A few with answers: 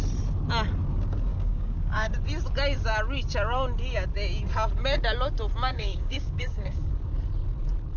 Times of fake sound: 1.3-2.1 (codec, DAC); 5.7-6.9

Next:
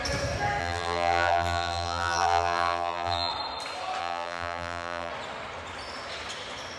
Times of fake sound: 0.6-3.3 (vocoder, BigVGAN v2); 4.0-5.1

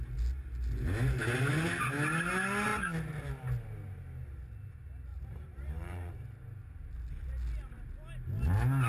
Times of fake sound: 5.1-6.1 (vocoder, BigVGAN v2)